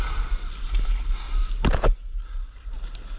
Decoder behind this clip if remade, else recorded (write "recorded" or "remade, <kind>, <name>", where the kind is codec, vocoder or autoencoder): recorded